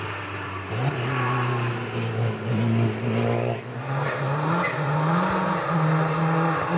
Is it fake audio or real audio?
real